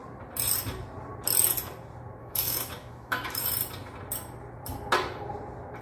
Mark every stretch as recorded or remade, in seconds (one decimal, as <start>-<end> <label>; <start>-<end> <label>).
0.0-2.2 recorded; 2.2-3.6 remade; 3.6-5.8 recorded